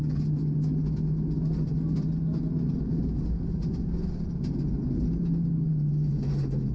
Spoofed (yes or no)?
no